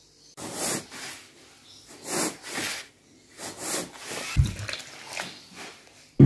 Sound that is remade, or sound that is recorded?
recorded